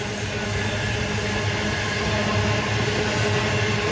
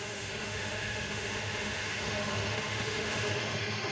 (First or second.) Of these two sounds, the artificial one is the second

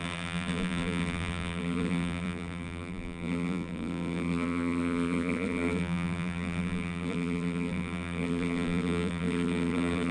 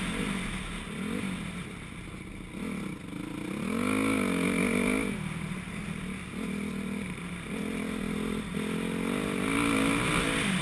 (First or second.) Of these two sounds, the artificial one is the first